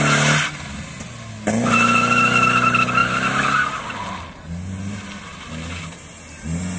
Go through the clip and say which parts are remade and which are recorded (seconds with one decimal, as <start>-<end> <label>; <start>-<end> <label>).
0.0-6.8 recorded

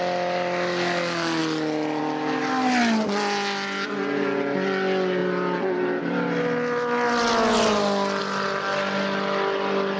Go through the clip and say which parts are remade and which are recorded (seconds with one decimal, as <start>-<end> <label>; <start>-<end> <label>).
0.0-10.0 recorded

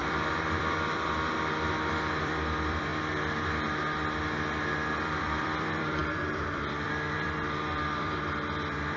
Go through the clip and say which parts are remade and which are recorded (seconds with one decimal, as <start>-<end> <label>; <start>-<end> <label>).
0.0-2.9 remade; 2.9-5.0 recorded; 5.0-9.0 remade

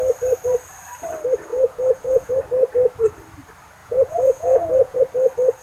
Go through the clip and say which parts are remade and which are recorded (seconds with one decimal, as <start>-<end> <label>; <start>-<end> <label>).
0.0-1.5 recorded; 1.5-2.4 remade; 2.4-3.8 recorded; 3.8-5.0 remade; 5.0-5.6 recorded

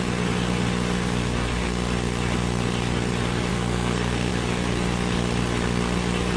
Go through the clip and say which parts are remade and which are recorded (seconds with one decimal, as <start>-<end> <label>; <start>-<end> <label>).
0.0-3.5 recorded; 3.5-4.3 remade; 4.3-6.4 recorded

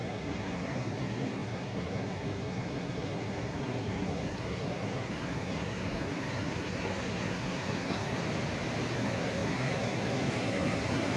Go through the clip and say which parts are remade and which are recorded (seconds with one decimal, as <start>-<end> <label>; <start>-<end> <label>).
0.0-8.2 remade; 8.2-8.9 recorded; 8.9-11.2 remade

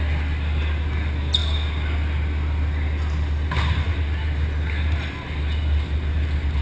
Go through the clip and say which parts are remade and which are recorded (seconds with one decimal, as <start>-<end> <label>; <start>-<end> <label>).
0.0-6.6 recorded

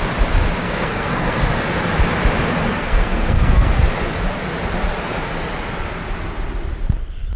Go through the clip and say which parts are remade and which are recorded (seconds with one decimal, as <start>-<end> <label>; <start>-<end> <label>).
0.0-0.6 recorded; 0.6-1.4 remade; 1.4-2.7 recorded; 2.7-3.7 remade; 3.7-7.4 recorded